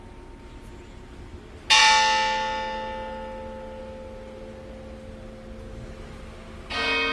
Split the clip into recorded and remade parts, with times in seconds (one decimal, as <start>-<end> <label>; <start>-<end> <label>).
0.0-7.1 recorded